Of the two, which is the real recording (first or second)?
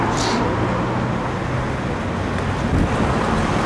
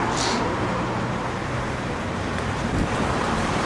first